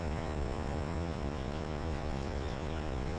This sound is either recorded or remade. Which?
remade